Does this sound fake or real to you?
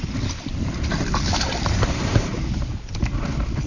fake